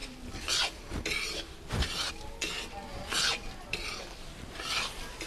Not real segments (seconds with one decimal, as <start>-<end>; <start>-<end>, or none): none

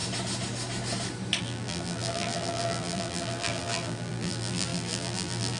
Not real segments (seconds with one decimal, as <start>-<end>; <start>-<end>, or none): 1.4-5.6

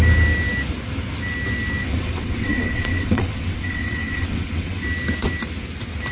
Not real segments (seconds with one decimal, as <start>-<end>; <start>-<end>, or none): 1.8-4.8

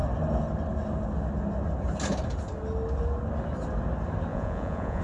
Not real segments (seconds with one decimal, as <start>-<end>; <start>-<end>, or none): 4.3-5.0

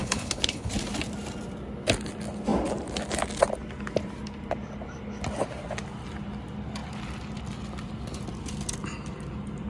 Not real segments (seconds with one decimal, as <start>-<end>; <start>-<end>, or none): 0.0-0.7

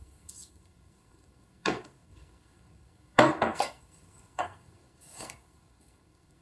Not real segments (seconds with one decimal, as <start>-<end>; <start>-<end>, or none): 0.0-6.4